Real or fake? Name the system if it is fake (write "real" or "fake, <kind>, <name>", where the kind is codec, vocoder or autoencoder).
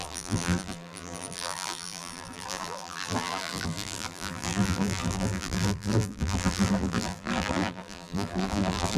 fake, vocoder, BigVGAN v2